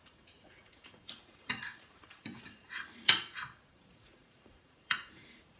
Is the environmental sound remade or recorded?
remade